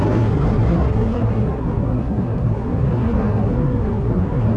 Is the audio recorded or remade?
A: remade